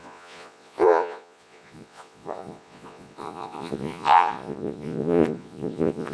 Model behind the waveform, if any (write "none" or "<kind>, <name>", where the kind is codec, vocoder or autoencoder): vocoder, Vocos